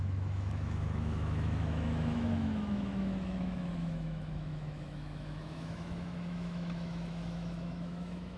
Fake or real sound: fake